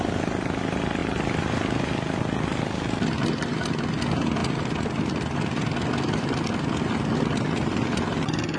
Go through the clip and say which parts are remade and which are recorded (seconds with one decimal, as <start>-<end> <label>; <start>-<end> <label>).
0.0-8.6 recorded

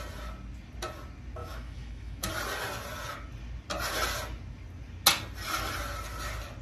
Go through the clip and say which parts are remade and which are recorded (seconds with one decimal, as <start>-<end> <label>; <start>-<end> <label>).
0.0-1.4 recorded; 1.4-2.3 remade; 2.3-6.6 recorded